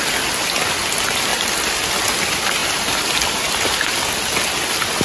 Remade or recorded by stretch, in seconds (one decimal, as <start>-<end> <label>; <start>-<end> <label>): 0.0-1.3 recorded; 1.3-1.9 remade; 1.9-2.6 recorded; 2.6-3.7 remade; 3.7-5.0 recorded